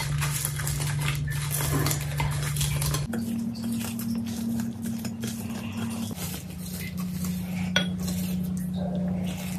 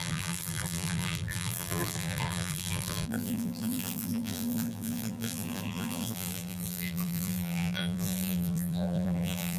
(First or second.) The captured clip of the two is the first